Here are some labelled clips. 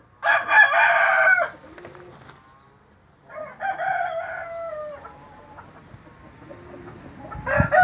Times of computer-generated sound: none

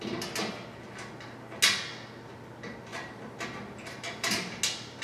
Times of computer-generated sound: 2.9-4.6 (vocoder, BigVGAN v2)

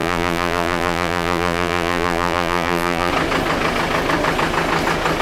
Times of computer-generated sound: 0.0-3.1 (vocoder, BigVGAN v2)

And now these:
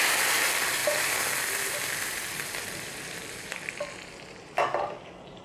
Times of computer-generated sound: 0.0-5.4 (vocoder, BigVGAN v2)